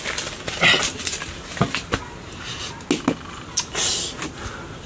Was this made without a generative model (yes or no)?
yes